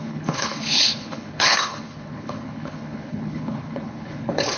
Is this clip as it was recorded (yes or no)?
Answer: no